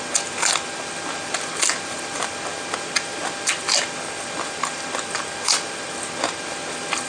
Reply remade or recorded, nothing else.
recorded